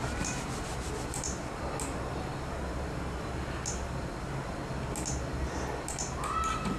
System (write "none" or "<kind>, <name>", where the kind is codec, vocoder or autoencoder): none